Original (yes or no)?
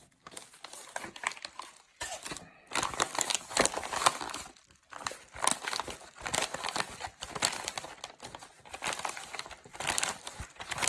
yes